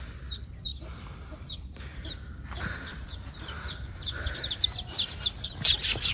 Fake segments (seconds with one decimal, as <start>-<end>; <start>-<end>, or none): 1.9-4.6